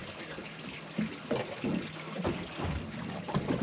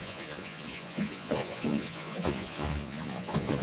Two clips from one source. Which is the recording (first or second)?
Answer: first